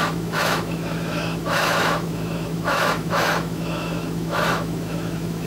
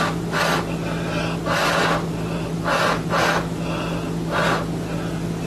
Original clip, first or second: second